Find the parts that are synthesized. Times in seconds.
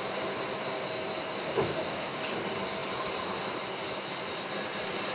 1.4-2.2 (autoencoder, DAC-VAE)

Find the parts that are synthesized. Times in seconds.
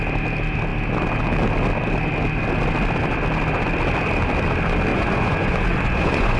4.9-6.4 (vocoder, Vocos)